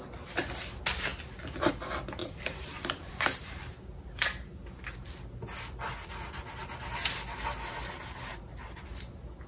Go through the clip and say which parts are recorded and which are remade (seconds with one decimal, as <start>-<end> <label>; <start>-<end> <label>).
0.0-2.2 recorded; 2.2-3.7 remade; 3.7-9.5 recorded